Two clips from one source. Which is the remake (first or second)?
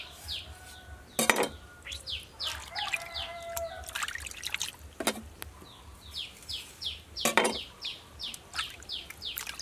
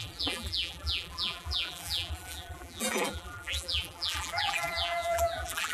second